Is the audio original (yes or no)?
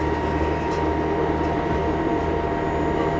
yes